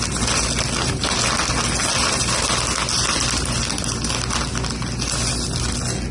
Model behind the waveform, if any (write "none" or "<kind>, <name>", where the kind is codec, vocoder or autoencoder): none